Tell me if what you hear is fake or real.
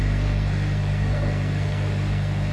fake